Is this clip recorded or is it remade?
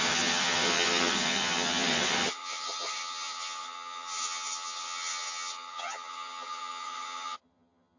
remade